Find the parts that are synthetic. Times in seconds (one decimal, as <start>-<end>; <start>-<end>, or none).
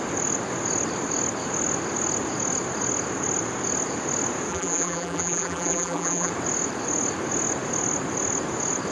4.5-6.3